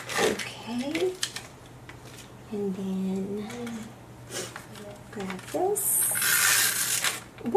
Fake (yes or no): no